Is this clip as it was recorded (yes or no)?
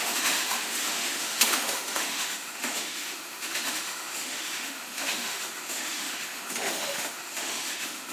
no